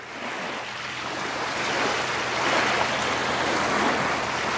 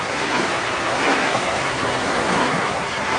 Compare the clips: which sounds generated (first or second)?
second